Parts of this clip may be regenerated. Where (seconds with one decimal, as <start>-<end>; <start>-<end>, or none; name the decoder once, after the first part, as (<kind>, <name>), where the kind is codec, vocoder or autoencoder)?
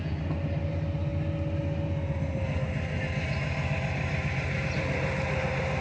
none